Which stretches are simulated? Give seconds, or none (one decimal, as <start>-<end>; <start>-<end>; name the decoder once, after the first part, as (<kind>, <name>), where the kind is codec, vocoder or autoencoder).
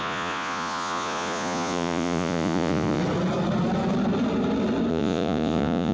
0.0-3.0 (vocoder, Vocos); 4.9-5.9